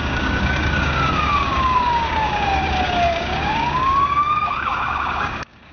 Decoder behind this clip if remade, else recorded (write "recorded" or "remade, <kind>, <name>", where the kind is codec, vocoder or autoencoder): remade, codec, DAC